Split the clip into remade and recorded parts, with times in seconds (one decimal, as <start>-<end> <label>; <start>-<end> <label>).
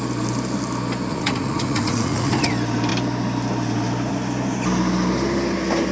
0.0-1.1 recorded; 1.1-2.5 remade; 2.5-5.9 recorded